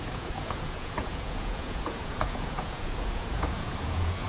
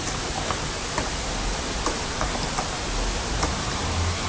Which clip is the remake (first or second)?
first